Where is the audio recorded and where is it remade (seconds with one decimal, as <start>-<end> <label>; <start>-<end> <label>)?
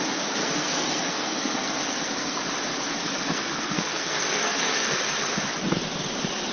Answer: 0.0-0.4 recorded; 0.4-2.4 remade; 2.4-3.0 recorded; 3.0-5.0 remade; 5.0-6.5 recorded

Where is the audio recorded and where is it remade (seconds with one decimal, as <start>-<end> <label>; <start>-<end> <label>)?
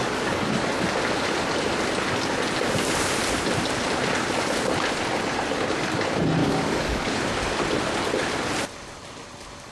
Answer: 0.0-0.5 remade; 0.5-6.4 recorded; 6.4-7.6 remade; 7.6-9.7 recorded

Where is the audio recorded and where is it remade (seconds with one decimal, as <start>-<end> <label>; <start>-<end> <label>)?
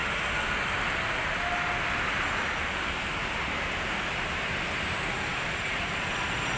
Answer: 0.0-6.6 recorded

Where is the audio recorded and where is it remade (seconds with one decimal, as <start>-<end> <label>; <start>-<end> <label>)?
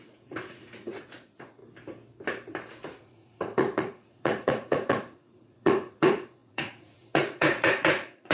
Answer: 0.0-1.6 remade; 1.6-3.0 recorded; 3.0-8.3 remade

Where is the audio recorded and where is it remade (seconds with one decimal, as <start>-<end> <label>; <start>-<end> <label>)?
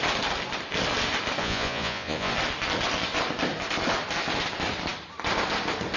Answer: 0.0-1.4 recorded; 1.4-2.3 remade; 2.3-6.0 recorded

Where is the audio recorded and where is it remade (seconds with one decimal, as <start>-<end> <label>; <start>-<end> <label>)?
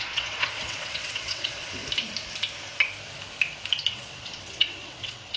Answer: 0.0-1.8 remade; 1.8-3.9 recorded; 3.9-5.4 remade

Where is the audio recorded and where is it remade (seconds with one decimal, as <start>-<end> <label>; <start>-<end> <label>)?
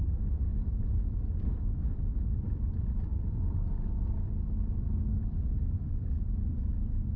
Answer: 0.0-3.1 remade; 3.1-4.6 recorded; 4.6-7.2 remade